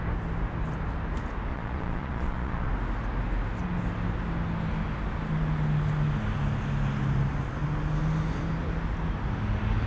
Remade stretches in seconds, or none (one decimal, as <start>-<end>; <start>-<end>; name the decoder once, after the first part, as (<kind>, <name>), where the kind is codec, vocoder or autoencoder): 1.5-2.7 (vocoder, Vocos)